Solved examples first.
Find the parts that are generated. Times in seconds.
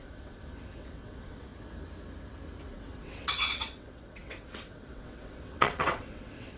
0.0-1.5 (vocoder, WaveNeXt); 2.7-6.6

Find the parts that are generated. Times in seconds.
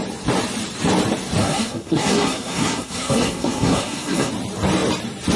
1.4-4.3 (codec, SNAC)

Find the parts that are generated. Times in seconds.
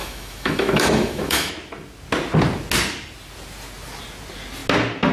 0.0-1.5 (autoencoder, DAC-VAE)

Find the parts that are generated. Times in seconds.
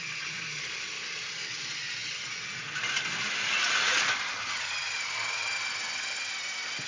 none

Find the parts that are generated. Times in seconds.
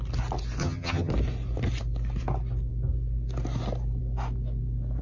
0.6-1.1 (vocoder, HiFi-GAN)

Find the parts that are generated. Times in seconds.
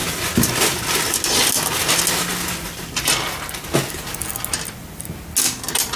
none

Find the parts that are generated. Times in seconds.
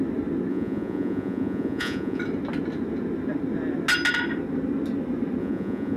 0.5-2.2 (vocoder, Vocos); 5.4-6.0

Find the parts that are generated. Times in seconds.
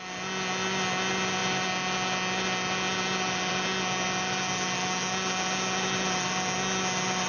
none